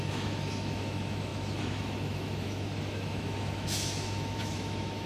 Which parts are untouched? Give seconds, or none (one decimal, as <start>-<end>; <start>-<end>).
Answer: none